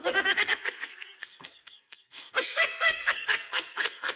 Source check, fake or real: fake